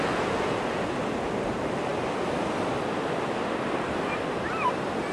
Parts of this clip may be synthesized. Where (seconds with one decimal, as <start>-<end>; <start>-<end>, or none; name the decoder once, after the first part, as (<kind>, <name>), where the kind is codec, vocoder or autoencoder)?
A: none